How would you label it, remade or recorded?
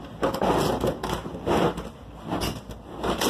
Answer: recorded